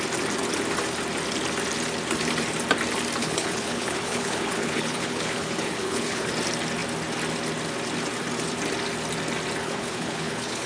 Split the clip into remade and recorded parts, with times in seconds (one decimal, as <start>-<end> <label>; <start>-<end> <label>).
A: 0.0-3.2 recorded; 3.2-6.3 remade; 6.3-9.6 recorded; 9.6-10.7 remade